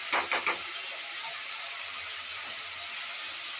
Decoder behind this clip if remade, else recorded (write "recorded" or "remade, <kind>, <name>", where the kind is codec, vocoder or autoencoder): recorded